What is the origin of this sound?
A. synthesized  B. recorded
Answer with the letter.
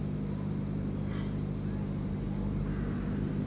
B